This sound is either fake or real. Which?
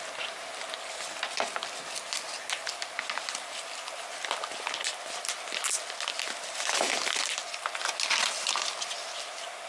real